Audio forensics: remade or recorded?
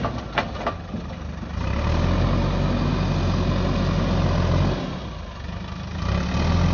recorded